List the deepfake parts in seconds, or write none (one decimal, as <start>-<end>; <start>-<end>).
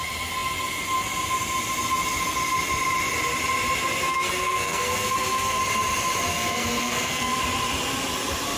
4.0-5.6; 6.3-7.4